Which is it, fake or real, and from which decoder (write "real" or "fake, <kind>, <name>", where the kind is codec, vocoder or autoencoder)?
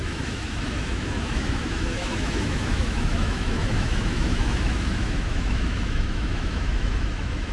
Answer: fake, autoencoder, DAC-VAE